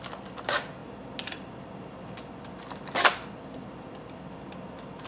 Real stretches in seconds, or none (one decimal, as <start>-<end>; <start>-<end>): 0.0-5.1